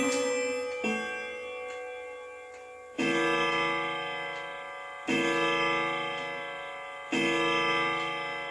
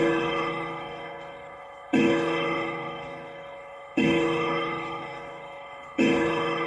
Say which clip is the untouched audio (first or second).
first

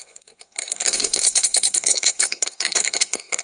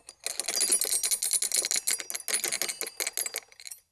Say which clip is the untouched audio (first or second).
second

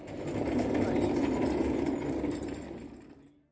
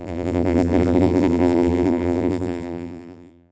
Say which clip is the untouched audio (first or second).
first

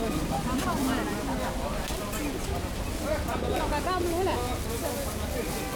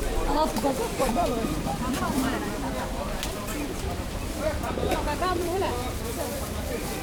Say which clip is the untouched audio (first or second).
first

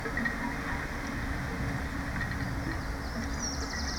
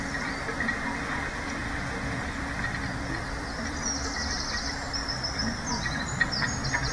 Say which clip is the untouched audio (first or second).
first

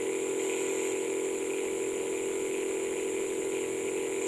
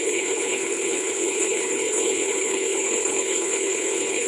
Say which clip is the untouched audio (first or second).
first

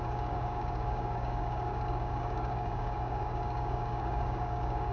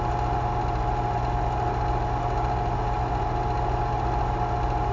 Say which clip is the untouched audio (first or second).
second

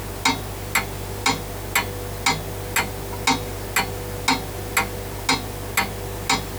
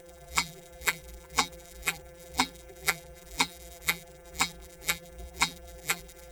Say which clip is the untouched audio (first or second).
first